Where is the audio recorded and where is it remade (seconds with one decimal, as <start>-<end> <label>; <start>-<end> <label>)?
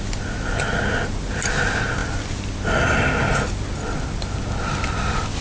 0.0-5.4 recorded